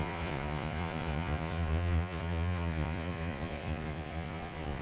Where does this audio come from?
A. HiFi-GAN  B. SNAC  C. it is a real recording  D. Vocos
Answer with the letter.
D